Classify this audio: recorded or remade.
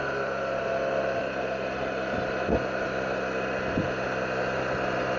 recorded